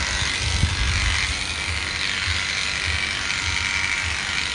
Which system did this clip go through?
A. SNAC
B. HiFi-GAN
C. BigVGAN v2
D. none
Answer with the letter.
D